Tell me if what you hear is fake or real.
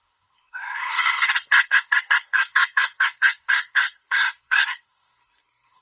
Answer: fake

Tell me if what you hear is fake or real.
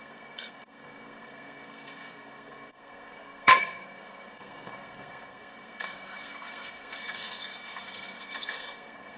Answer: fake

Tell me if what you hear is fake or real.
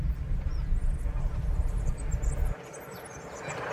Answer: real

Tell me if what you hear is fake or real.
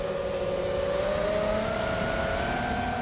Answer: real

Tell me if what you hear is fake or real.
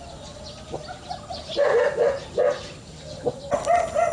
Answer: real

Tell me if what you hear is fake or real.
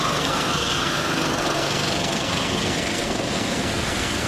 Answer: fake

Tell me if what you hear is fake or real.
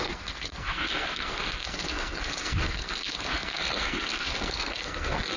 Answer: fake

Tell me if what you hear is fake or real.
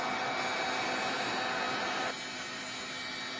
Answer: real